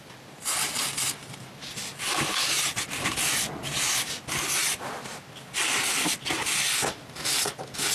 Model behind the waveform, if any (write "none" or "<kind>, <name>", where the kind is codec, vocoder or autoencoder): none